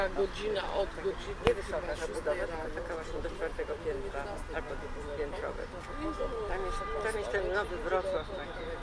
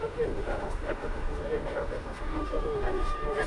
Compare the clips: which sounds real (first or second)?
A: first